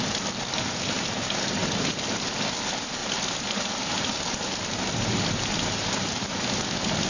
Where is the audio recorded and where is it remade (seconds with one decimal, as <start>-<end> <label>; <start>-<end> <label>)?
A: 0.0-7.1 recorded

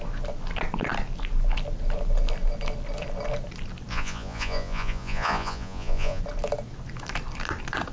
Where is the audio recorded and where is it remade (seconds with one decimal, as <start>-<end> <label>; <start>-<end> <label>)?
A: 0.0-3.9 recorded; 3.9-6.2 remade; 6.2-7.9 recorded

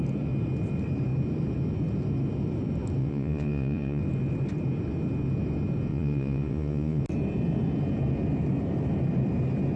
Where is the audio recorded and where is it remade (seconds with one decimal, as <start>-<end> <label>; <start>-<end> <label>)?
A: 0.0-3.0 recorded; 3.0-4.0 remade; 4.0-5.9 recorded; 5.9-7.0 remade; 7.0-9.8 recorded